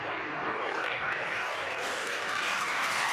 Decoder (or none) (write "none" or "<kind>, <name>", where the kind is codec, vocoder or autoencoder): codec, DAC